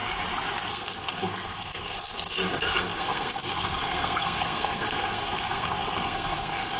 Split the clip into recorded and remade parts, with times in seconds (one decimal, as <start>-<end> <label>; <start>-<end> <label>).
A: 0.0-0.7 recorded; 0.7-6.8 remade